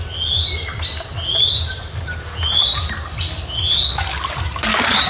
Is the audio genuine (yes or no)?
yes